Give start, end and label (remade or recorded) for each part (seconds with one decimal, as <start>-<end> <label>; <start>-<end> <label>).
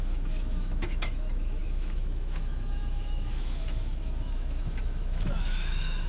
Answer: 0.0-6.1 remade